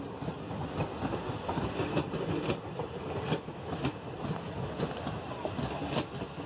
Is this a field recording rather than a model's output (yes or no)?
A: yes